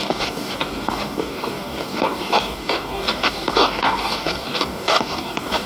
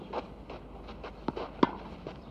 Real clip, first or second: second